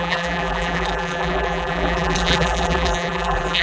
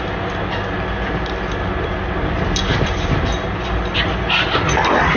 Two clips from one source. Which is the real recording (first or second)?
second